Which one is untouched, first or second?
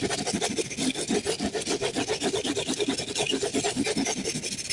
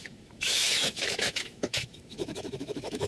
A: first